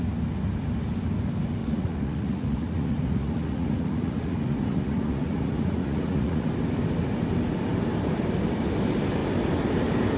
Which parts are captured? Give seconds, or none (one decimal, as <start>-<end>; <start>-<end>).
0.0-1.6; 6.5-10.2